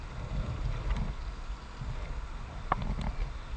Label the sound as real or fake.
real